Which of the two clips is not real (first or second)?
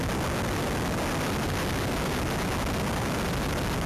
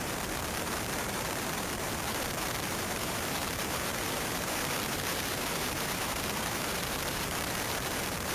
second